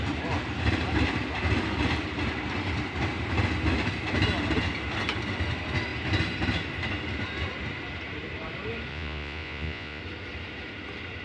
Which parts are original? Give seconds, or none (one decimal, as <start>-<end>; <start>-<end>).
0.0-8.9; 10.0-11.2